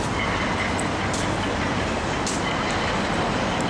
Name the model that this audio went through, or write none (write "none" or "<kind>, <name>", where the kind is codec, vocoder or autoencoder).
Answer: none